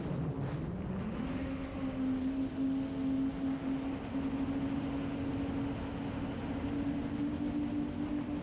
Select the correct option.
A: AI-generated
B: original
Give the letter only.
B